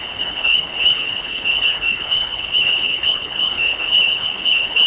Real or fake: fake